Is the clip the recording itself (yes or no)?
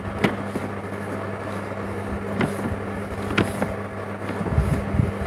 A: yes